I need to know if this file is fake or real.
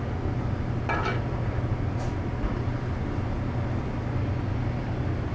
real